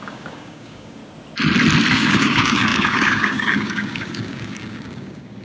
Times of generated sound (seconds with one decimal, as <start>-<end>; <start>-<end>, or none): 0.0-1.0; 1.9-5.4